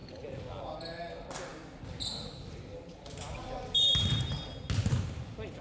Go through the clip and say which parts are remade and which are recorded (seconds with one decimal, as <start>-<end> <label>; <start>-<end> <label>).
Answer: 0.0-5.6 recorded